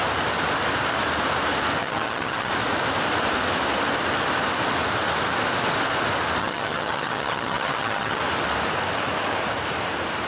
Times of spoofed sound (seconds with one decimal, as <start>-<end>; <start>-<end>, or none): 1.8-2.5; 6.4-8.2